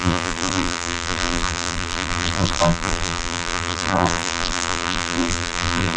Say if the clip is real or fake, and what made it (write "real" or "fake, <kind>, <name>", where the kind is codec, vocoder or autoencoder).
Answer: fake, vocoder, BigVGAN v2